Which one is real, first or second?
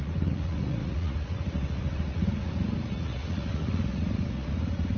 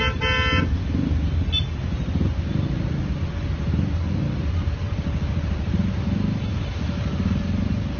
second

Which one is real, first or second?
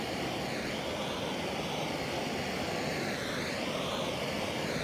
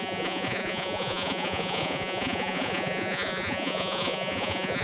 first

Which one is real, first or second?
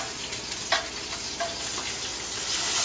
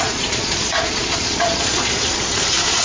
first